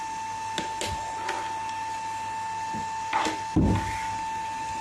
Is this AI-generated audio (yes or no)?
no